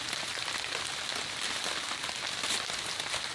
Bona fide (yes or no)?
yes